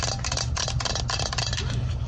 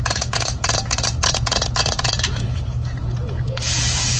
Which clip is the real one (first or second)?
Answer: first